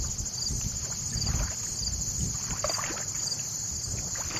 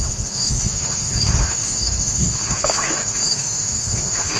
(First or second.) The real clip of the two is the first